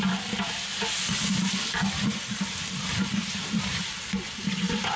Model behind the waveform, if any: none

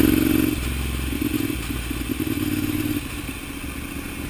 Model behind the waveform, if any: none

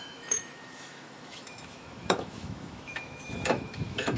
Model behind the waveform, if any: autoencoder, DAC-VAE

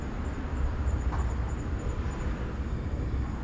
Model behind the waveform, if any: none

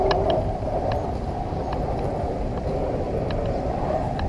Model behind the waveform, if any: none